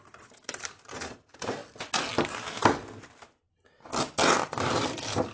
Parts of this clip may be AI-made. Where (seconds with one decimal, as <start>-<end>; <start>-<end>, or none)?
0.0-1.6; 4.6-5.3